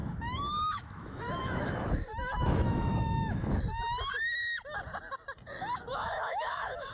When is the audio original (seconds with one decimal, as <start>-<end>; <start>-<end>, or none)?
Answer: 3.6-5.9